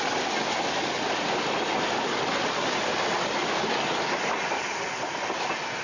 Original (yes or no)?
yes